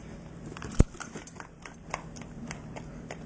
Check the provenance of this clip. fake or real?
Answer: fake